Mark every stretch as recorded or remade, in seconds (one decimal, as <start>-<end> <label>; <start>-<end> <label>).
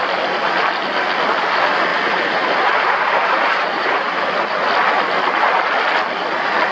0.0-1.9 recorded; 1.9-4.5 remade; 4.5-6.7 recorded